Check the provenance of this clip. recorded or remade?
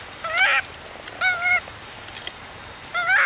recorded